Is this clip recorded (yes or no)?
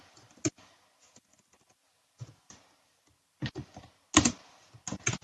yes